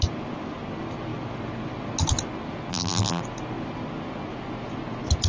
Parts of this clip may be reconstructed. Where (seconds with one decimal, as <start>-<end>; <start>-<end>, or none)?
2.7-3.2